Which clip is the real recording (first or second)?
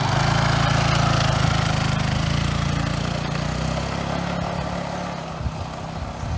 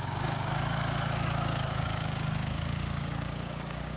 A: first